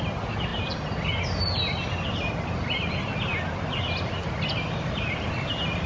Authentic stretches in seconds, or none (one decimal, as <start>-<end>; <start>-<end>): 0.0-5.9